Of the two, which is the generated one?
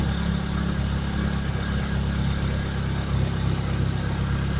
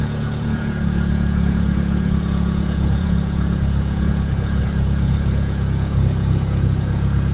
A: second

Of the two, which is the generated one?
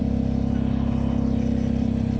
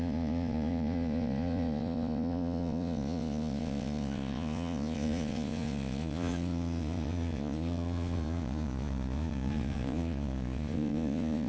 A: second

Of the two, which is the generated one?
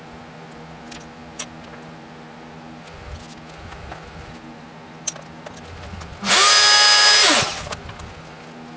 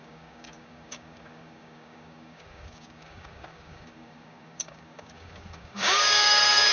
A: second